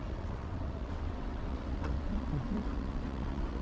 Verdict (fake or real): fake